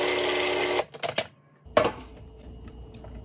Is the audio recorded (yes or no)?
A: yes